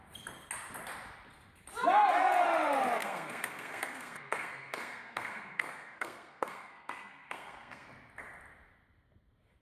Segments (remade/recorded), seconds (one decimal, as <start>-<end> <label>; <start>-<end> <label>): 0.0-3.0 recorded; 3.0-7.9 remade; 7.9-9.6 recorded